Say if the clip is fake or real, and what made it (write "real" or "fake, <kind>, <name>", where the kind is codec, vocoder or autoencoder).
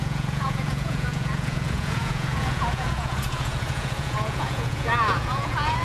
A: fake, vocoder, Vocos